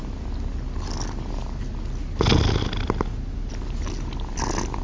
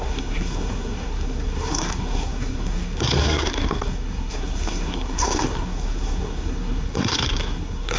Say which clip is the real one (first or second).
first